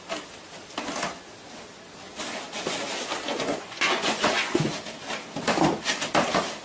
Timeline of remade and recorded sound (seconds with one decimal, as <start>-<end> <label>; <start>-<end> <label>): 0.0-3.3 recorded; 3.3-4.7 remade; 4.7-6.6 recorded